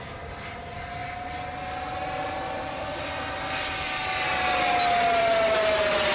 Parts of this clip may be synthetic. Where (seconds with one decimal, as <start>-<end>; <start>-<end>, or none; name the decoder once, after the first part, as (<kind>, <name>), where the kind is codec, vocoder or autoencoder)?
none